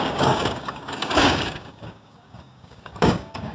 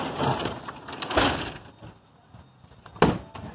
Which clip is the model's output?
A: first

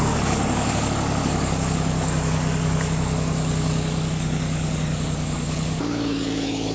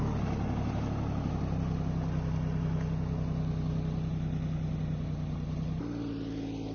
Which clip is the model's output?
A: first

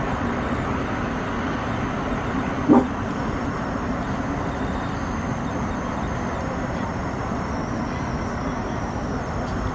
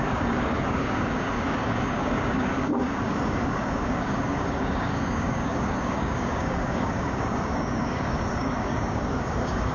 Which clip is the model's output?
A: second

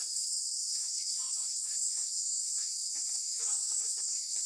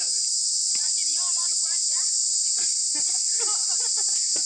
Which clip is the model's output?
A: first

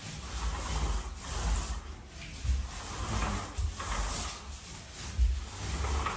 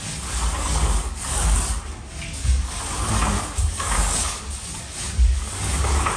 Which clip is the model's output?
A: second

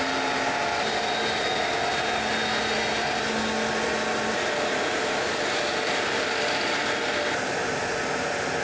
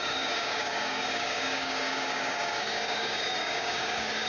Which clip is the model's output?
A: second